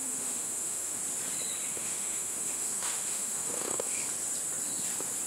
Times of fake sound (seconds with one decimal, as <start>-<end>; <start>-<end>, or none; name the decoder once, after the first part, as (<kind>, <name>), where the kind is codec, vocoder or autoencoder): 0.0-1.0 (autoencoder, DAC-VAE); 1.7-4.0